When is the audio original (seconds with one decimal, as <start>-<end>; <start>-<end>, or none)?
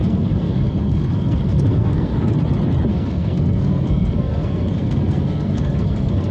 2.3-2.9